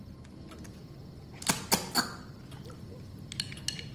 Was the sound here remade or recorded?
recorded